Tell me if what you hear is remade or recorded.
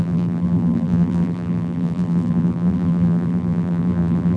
remade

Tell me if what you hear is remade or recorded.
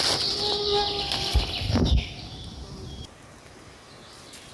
recorded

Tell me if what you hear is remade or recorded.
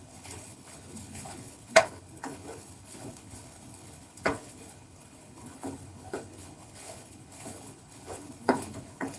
remade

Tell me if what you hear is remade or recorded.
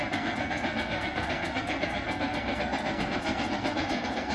remade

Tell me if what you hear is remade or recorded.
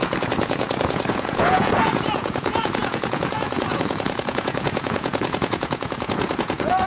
remade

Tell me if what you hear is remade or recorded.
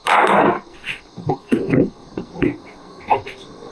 remade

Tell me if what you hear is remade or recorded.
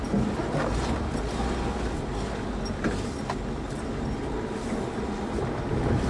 recorded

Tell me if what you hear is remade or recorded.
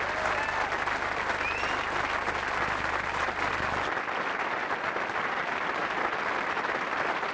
recorded